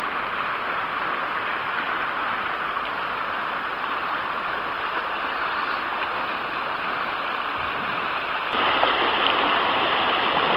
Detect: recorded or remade recorded